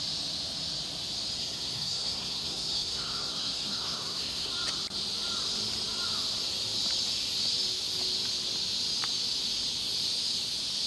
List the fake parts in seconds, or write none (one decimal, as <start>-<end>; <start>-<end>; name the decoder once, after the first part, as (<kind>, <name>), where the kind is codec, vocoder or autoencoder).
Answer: 1.4-4.5 (codec, SNAC)